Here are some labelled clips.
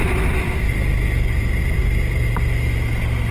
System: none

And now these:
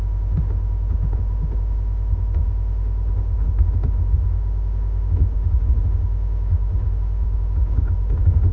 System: autoencoder, DAC-VAE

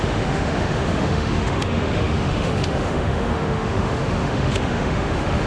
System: autoencoder, DAC-VAE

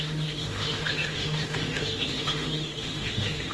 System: autoencoder, DAC-VAE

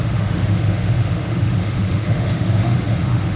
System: autoencoder, DAC-VAE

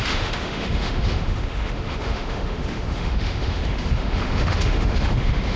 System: autoencoder, DAC-VAE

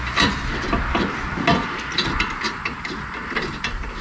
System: none